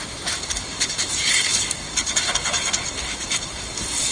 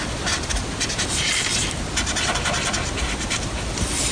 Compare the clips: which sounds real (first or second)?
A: second